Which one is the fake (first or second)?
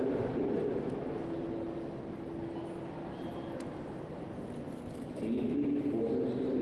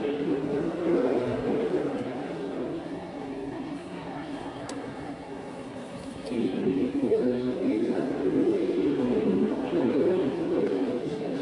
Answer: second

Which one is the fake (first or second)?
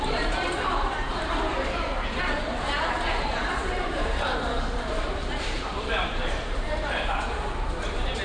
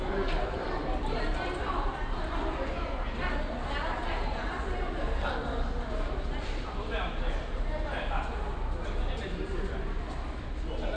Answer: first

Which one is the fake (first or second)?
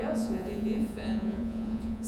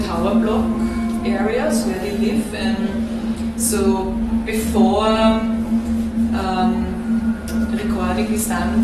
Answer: first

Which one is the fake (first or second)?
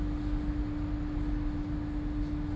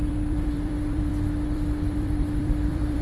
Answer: second